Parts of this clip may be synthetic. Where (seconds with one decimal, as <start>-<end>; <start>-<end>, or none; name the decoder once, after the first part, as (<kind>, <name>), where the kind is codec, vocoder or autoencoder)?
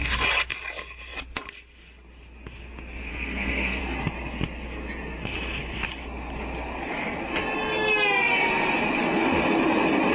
3.1-3.8 (codec, SNAC)